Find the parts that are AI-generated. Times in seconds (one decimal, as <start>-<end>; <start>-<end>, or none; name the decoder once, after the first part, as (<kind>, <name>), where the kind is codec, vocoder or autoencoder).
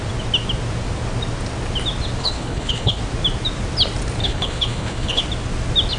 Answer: 2.2-3.0 (codec, HILCodec); 4.2-5.2